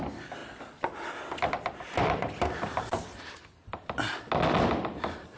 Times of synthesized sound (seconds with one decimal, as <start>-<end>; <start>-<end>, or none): none